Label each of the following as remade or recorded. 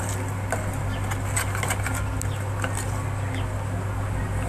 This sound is recorded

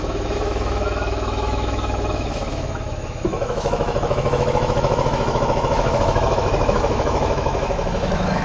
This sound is remade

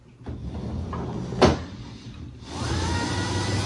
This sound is recorded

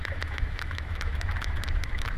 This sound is remade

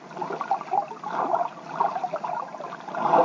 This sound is recorded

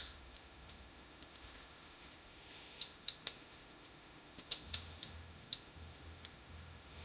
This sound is remade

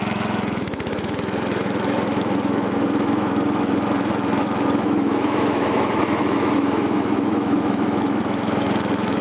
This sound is remade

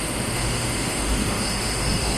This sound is remade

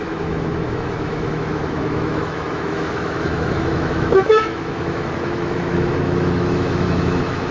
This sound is remade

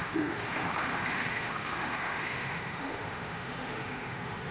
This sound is remade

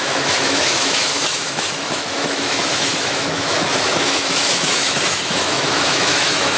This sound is remade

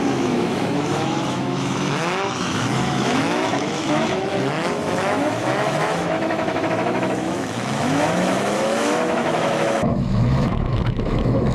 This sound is remade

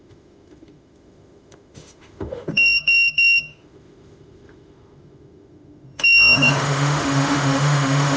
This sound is remade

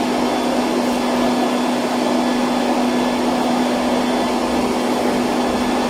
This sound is recorded